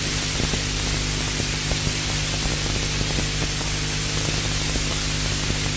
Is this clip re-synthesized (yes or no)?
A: no